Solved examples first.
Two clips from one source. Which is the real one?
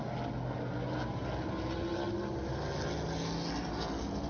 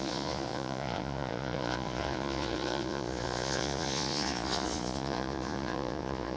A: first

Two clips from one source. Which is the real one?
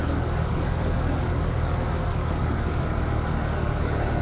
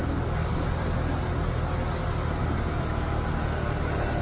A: second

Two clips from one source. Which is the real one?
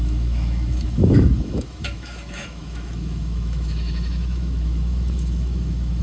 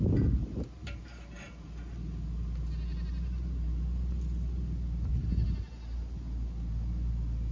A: second